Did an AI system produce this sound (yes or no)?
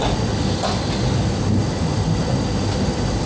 no